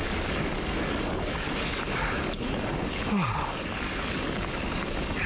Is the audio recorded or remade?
remade